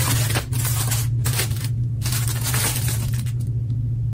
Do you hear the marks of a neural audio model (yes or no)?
no